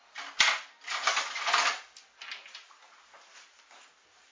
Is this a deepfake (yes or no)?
no